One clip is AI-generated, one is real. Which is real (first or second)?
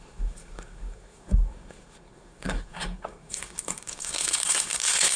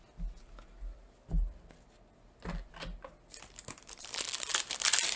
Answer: second